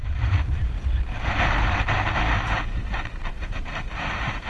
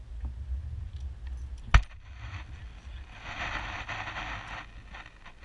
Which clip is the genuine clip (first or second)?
second